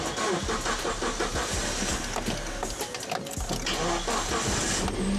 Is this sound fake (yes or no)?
no